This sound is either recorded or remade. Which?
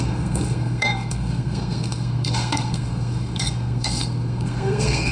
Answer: remade